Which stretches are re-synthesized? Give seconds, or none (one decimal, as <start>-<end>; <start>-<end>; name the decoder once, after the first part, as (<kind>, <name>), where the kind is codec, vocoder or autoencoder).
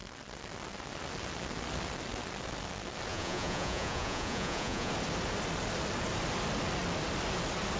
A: 3.1-4.9 (vocoder, Vocos)